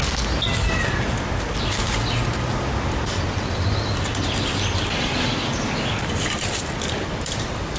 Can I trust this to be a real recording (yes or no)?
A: yes